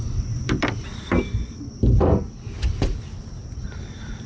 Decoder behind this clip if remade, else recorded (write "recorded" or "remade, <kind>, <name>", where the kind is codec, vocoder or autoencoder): recorded